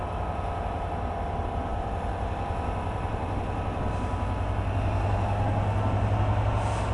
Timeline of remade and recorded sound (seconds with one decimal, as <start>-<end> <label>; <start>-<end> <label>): 0.0-1.7 recorded; 1.7-3.4 remade; 3.4-6.9 recorded